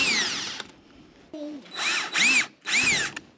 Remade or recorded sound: recorded